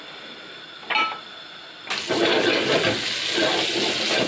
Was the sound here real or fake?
real